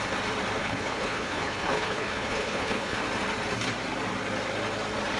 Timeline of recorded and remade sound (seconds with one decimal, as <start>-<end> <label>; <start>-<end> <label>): 0.0-0.6 recorded; 0.6-3.0 remade; 3.0-5.2 recorded